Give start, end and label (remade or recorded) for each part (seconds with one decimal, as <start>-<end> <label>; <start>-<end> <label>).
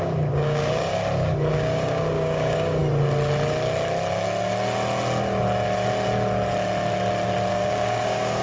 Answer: 0.0-1.0 remade; 1.0-1.5 recorded; 1.5-2.8 remade; 2.8-7.5 recorded; 7.5-8.4 remade